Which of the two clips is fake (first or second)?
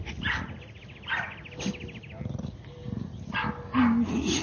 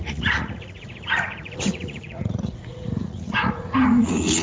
second